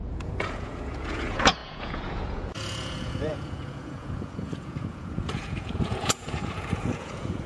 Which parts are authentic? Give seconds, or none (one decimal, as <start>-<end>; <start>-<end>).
none